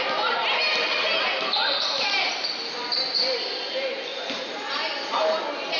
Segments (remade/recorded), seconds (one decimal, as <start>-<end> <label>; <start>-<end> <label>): 0.0-1.6 recorded; 1.6-2.2 remade; 2.2-4.1 recorded; 4.1-4.7 remade; 4.7-5.8 recorded

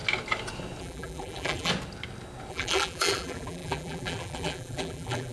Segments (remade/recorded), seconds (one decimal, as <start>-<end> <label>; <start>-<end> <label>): 0.0-0.8 recorded; 0.8-1.7 remade; 1.7-2.5 recorded; 2.5-5.3 remade

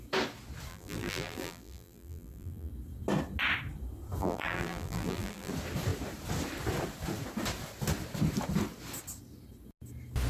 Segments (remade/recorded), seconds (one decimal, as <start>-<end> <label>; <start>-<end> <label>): 0.0-0.7 recorded; 0.7-2.7 remade; 2.7-4.2 recorded; 4.2-5.5 remade; 5.5-10.3 recorded

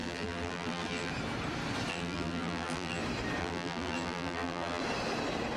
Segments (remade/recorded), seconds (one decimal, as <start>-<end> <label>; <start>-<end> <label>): 0.0-1.1 remade; 1.1-1.9 recorded; 1.9-3.0 remade; 3.0-3.4 recorded; 3.4-4.8 remade; 4.8-5.6 recorded

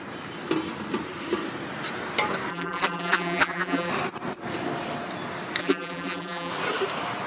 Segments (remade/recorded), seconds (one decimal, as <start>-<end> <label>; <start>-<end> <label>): 0.0-2.5 recorded; 2.5-3.9 remade; 3.9-5.6 recorded; 5.6-6.5 remade; 6.5-7.3 recorded